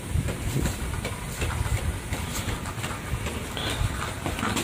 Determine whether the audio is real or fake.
real